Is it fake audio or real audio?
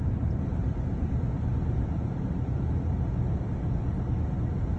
real